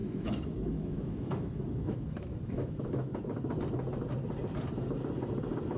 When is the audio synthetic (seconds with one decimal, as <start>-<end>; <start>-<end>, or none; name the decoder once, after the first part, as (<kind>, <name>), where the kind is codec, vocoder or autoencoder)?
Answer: 0.0-3.1 (autoencoder, DAC-VAE)